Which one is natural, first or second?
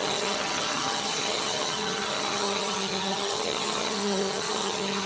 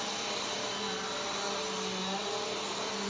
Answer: second